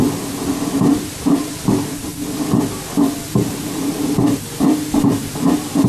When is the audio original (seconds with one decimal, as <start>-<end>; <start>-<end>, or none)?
0.0-5.9